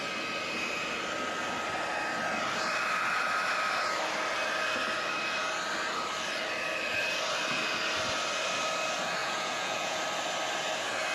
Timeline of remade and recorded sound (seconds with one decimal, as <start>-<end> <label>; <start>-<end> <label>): 0.0-9.2 recorded; 9.2-10.0 remade; 10.0-11.1 recorded